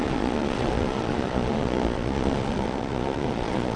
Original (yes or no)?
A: no